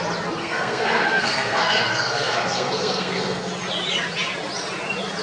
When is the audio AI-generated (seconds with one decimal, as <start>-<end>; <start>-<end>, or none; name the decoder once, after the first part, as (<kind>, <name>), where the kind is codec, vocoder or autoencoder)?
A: 0.4-3.5 (codec, SNAC)